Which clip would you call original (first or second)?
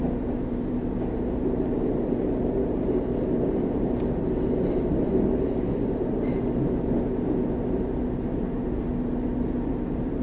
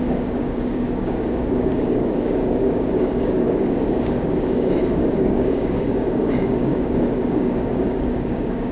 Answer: first